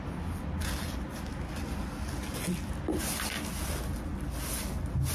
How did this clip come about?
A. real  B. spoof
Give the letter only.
A